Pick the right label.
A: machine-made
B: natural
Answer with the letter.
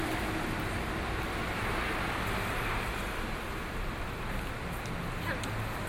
B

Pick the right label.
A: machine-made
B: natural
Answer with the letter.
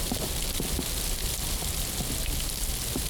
B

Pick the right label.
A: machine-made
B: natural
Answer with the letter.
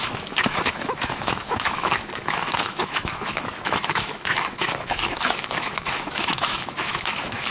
A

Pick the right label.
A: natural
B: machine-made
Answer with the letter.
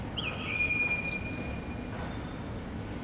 A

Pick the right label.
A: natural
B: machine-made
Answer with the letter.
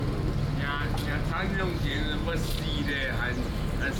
A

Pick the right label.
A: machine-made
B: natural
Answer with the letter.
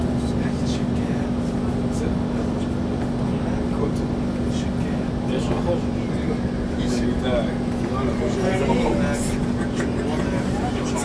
B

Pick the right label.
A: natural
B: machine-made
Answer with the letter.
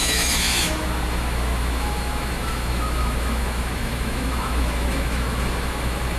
B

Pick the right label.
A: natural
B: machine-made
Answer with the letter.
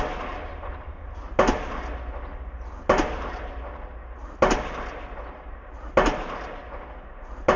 A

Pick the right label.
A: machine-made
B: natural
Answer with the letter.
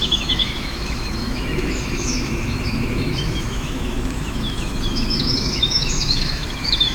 A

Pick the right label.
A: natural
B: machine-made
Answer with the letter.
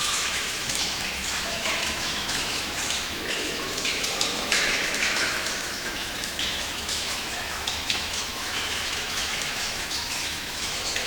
B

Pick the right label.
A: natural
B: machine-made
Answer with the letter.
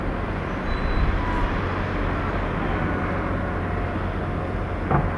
A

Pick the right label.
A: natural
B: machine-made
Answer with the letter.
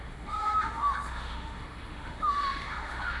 B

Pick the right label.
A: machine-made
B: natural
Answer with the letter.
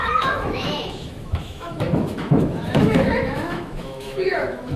A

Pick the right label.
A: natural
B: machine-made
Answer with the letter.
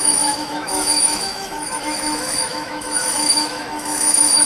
B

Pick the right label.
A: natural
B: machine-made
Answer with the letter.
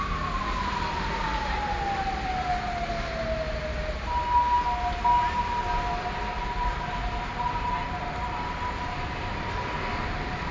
A